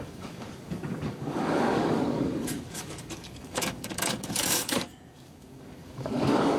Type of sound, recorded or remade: remade